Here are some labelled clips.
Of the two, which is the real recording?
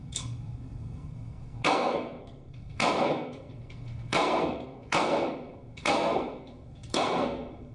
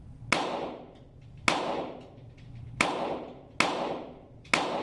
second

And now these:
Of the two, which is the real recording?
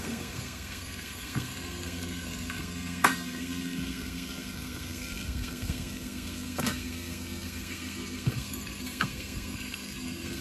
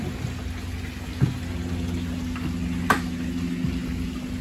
second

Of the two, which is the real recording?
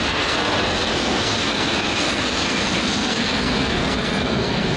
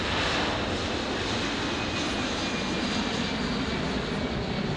second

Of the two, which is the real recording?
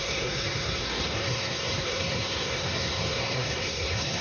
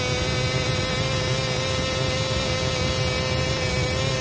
second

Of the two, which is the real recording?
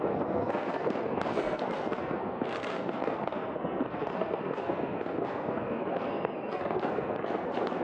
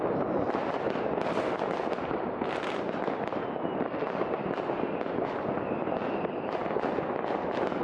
second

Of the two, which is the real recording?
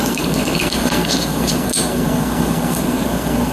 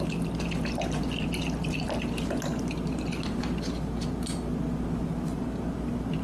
second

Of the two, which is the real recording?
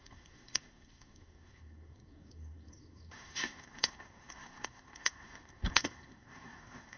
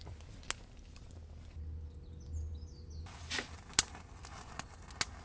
second